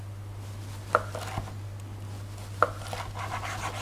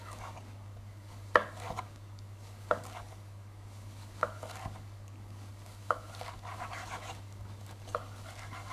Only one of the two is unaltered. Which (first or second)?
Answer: first